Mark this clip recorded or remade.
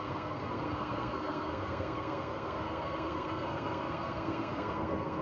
remade